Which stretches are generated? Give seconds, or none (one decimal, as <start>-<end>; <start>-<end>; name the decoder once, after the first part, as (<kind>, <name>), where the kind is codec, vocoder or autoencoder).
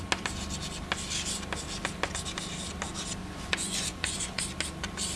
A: 3.2-4.4 (vocoder, Vocos)